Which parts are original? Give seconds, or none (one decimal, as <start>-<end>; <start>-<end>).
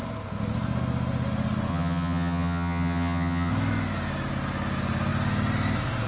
0.0-1.7; 3.5-6.1